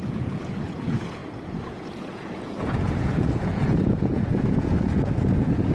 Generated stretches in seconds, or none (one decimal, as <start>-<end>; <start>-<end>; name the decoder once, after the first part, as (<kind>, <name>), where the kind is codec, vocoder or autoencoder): 0.0-5.7 (vocoder, Vocos)